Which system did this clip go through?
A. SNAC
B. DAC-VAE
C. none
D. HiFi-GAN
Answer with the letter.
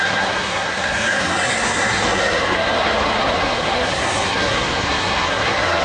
A